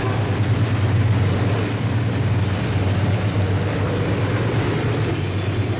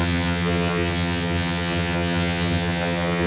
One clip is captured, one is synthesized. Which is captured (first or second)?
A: first